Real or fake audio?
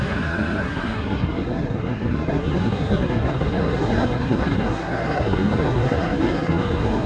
fake